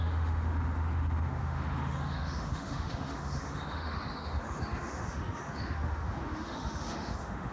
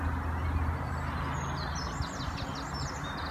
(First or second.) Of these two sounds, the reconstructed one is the first